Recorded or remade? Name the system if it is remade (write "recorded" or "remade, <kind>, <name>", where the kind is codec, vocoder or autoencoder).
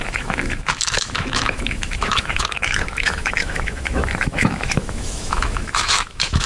remade, autoencoder, DAC-VAE